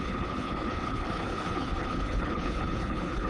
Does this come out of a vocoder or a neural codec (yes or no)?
yes